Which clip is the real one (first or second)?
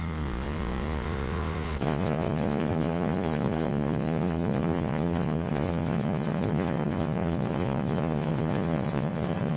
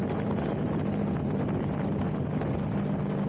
second